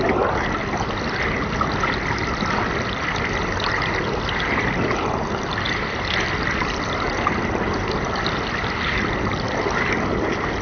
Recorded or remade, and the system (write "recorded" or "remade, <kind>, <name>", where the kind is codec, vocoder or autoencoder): recorded